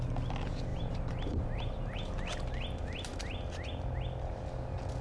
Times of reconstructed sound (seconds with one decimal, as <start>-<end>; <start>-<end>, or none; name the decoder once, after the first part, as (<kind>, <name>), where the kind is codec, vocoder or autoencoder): 0.7-2.1 (vocoder, BigVGAN v2)